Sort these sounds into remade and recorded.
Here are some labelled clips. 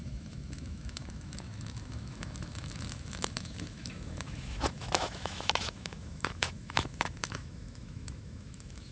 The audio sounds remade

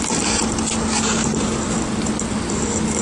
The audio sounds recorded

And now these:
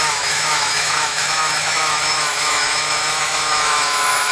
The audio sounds remade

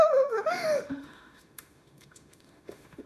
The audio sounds remade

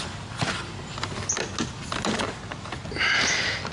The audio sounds recorded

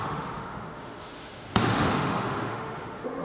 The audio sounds remade